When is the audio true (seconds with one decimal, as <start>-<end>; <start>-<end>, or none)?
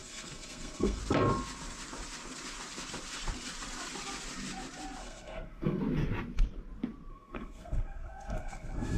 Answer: 1.0-5.0; 5.8-7.1